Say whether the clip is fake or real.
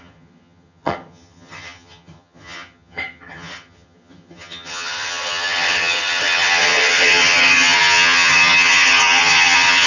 fake